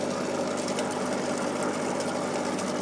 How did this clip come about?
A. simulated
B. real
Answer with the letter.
B